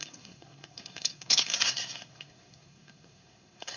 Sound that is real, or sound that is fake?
fake